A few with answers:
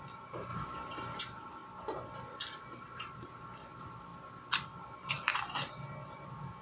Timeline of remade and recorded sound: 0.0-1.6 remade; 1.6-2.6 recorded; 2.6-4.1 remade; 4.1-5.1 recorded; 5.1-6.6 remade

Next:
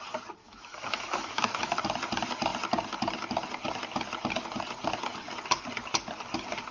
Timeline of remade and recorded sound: 0.0-0.4 recorded; 0.4-1.8 remade; 1.8-6.7 recorded

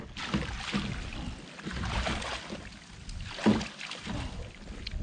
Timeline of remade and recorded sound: 0.0-5.0 recorded